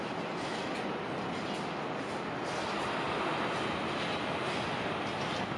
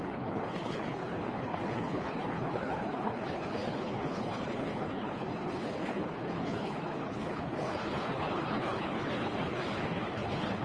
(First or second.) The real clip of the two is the first